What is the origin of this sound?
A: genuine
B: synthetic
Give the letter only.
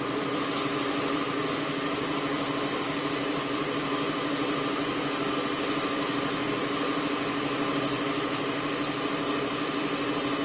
A